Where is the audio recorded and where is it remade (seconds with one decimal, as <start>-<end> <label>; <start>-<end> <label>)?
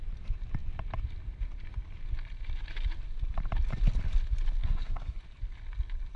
0.0-4.6 recorded; 4.6-5.2 remade; 5.2-6.2 recorded